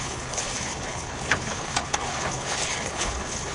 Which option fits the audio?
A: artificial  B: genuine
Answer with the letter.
A